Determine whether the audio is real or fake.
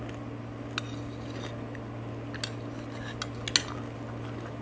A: real